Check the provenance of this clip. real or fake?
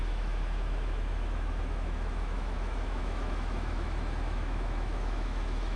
fake